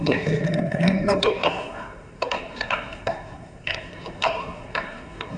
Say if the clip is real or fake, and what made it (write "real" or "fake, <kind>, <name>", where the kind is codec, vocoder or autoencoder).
fake, codec, SNAC